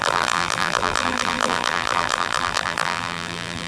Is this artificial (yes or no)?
yes